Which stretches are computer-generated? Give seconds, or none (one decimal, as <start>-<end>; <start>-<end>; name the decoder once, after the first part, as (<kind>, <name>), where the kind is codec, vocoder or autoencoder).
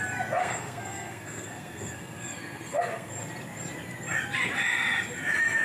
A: 0.4-3.1 (codec, SNAC)